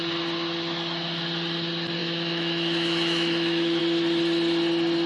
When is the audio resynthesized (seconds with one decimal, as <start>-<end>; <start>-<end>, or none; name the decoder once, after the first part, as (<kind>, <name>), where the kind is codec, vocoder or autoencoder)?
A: 2.0-3.8 (autoencoder, DAC-VAE)